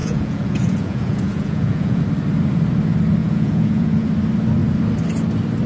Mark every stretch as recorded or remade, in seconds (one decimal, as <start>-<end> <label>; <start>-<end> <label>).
0.0-2.0 remade; 2.0-3.2 recorded; 3.2-4.1 remade; 4.1-5.7 recorded